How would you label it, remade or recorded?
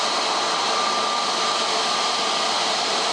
recorded